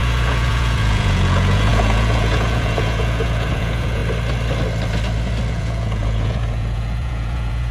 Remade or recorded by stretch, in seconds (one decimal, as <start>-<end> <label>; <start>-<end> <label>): 0.0-4.0 remade; 4.0-5.5 recorded; 5.5-7.7 remade

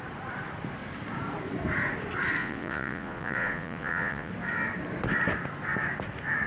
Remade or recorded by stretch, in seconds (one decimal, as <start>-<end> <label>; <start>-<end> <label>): 0.0-2.4 recorded; 2.4-4.3 remade; 4.3-6.5 recorded

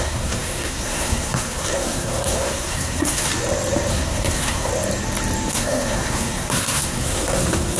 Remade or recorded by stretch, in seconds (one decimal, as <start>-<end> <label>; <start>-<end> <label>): 0.0-3.3 remade; 3.3-3.9 recorded; 3.9-4.7 remade; 4.7-5.5 recorded; 5.5-7.8 remade

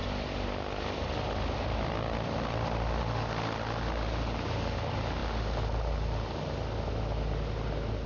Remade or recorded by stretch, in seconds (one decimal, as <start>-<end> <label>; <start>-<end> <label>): 0.0-3.0 remade; 3.0-8.1 recorded

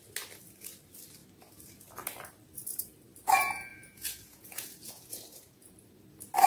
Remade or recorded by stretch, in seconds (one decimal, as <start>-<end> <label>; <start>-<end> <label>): 0.0-3.7 recorded; 3.7-5.7 remade; 5.7-6.5 recorded

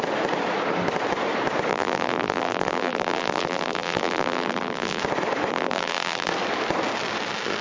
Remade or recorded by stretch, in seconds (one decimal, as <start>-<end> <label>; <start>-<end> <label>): 0.0-1.7 recorded; 1.7-5.0 remade; 5.0-5.5 recorded; 5.5-6.3 remade; 6.3-7.6 recorded